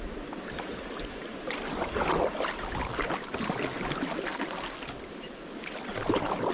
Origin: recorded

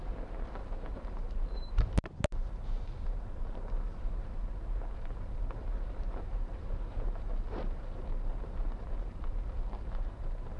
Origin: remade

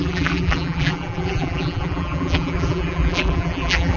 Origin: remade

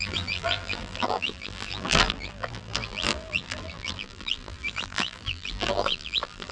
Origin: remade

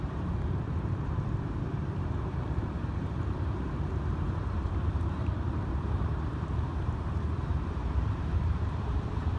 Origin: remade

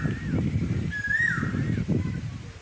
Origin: remade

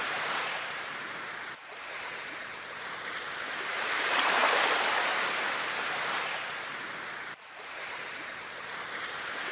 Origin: remade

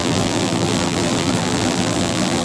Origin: remade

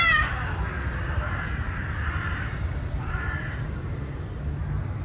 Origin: recorded